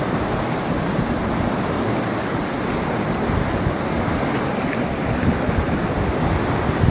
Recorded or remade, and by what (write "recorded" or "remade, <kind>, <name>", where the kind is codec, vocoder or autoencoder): recorded